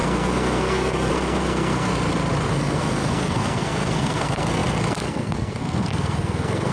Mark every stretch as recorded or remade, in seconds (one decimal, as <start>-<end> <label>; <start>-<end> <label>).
0.0-1.9 remade; 1.9-2.5 recorded; 2.5-6.7 remade